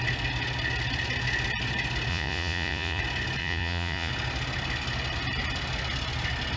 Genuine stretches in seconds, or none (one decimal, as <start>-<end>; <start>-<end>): 0.0-2.1; 3.0-3.4; 4.1-6.6